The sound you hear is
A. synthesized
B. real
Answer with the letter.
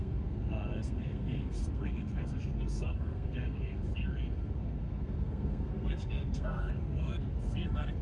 A